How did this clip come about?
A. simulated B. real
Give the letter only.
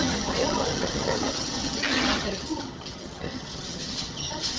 A